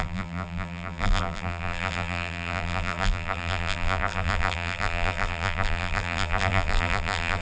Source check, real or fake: fake